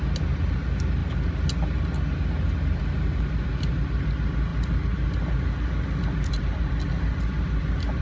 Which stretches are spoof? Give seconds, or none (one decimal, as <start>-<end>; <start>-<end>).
none